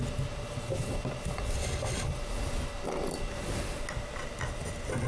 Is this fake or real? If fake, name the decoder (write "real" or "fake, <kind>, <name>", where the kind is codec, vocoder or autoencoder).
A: real